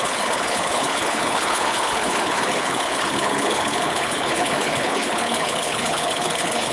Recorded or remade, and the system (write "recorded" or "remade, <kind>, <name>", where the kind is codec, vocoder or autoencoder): remade, codec, HILCodec